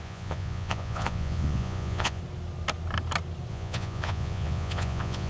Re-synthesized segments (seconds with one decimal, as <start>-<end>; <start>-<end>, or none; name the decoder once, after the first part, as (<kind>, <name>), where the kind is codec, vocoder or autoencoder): 0.0-2.2 (vocoder, Vocos); 3.5-5.3